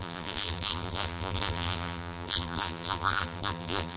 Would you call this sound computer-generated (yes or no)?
yes